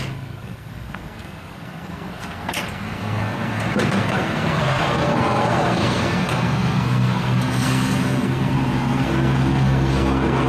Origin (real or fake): fake